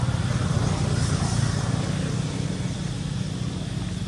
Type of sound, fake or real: real